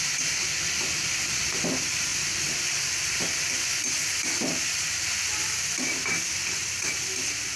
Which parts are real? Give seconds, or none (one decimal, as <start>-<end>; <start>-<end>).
0.0-7.6